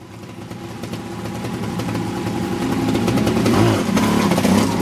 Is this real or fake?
real